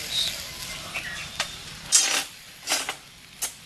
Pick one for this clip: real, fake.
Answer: real